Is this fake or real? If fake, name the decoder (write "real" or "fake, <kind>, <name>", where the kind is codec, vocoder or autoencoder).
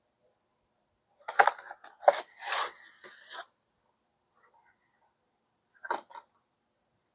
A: real